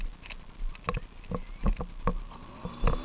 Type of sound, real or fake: real